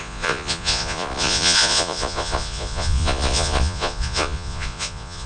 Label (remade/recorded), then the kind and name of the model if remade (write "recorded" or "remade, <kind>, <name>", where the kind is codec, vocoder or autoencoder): remade, vocoder, Vocos